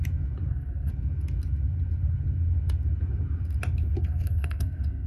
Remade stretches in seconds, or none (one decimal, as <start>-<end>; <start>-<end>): 0.5-0.9; 4.0-5.1